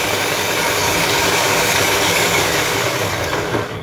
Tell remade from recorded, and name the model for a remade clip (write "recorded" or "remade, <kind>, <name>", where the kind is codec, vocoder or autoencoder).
remade, codec, DAC